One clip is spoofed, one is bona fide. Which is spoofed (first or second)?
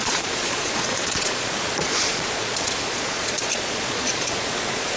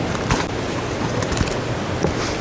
first